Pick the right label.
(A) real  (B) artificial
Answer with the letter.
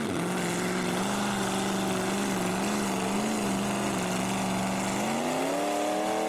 A